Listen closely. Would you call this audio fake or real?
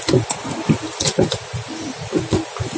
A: real